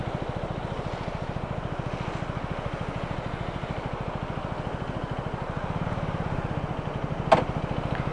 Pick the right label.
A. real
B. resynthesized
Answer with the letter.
A